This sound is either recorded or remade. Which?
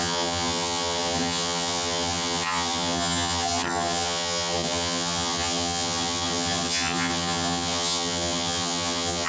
remade